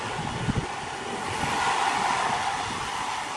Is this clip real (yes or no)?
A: yes